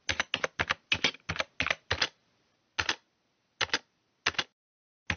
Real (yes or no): yes